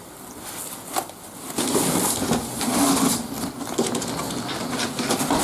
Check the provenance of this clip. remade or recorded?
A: recorded